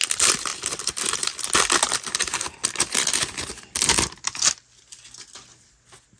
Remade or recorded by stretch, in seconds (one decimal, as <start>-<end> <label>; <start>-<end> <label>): 0.0-6.2 recorded